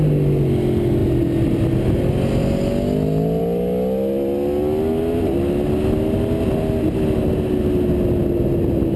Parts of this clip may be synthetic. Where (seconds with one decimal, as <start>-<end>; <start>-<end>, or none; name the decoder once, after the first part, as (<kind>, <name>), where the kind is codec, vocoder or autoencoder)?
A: none